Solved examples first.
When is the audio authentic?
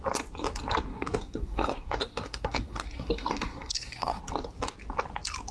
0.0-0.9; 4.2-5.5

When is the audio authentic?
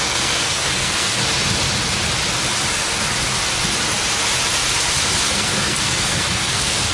1.2-5.3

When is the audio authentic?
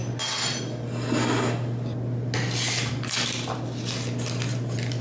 0.0-5.0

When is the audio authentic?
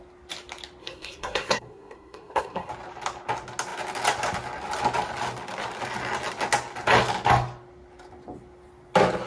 0.0-0.8; 2.7-9.3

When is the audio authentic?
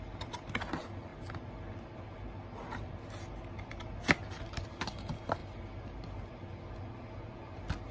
0.0-7.9